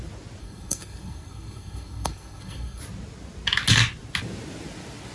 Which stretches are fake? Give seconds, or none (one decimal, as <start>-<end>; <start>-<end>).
0.4-2.8